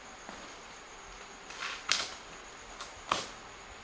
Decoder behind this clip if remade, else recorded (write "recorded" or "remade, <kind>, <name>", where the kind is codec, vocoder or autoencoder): recorded